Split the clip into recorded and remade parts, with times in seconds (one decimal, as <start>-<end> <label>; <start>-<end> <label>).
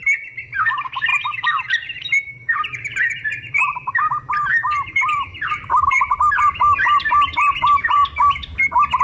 0.0-1.1 recorded; 1.1-6.3 remade; 6.3-9.0 recorded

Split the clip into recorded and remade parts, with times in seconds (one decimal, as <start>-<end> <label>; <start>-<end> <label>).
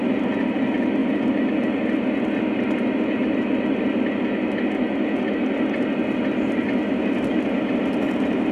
0.0-8.5 recorded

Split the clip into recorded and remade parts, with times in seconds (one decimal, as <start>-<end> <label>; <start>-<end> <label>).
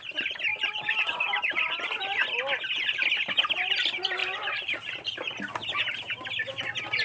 0.0-0.5 recorded; 0.5-1.6 remade; 1.6-4.2 recorded; 4.2-5.3 remade; 5.3-7.0 recorded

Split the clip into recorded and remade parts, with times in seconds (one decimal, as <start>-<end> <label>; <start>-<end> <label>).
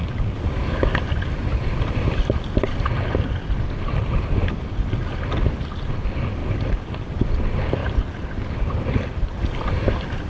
0.0-1.5 recorded; 1.5-5.1 remade; 5.1-6.4 recorded; 6.4-7.1 remade; 7.1-7.8 recorded; 7.8-9.2 remade; 9.2-10.3 recorded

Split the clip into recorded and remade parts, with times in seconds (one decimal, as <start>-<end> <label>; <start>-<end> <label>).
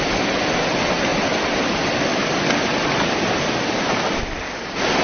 0.0-1.1 recorded; 1.1-3.8 remade; 3.8-5.0 recorded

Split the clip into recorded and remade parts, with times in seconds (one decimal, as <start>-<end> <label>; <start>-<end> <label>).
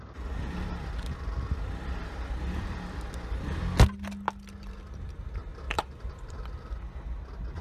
0.0-2.0 recorded; 2.0-3.0 remade; 3.0-5.5 recorded; 5.5-6.6 remade; 6.6-7.6 recorded